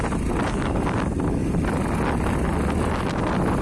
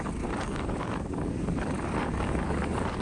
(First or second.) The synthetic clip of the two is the second